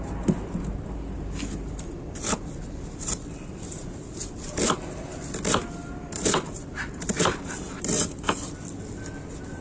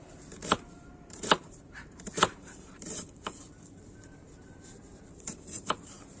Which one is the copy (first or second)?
second